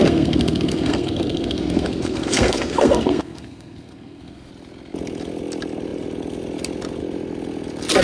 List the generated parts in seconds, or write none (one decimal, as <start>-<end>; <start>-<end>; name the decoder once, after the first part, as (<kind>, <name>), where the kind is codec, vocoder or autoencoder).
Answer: 0.0-4.5 (codec, SNAC)